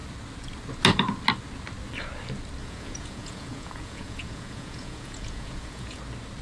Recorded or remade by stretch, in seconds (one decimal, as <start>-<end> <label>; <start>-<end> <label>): 0.0-2.6 recorded; 2.6-6.0 remade; 6.0-6.4 recorded